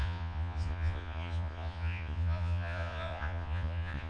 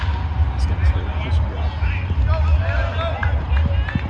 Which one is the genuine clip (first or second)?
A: second